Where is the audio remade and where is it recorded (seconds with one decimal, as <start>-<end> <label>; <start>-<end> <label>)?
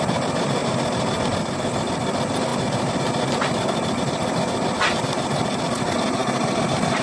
0.0-7.0 recorded